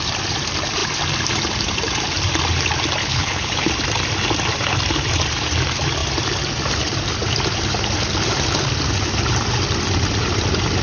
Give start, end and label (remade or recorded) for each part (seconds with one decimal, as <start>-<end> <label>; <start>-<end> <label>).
0.0-3.0 recorded; 3.0-3.7 remade; 3.7-10.8 recorded